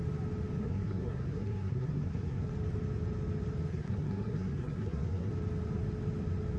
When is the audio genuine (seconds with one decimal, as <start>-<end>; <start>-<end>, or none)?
0.0-0.6; 2.5-3.7; 5.3-6.6